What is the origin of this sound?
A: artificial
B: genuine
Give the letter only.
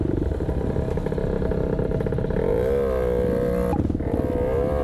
B